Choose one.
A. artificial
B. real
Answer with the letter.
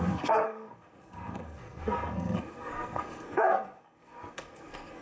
A